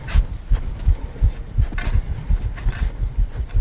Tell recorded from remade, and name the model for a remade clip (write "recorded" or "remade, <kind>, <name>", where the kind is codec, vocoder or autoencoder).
recorded